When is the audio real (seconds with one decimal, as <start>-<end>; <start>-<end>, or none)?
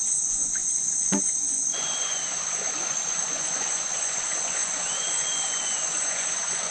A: none